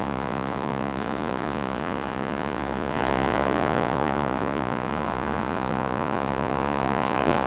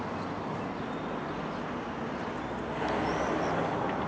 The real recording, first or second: second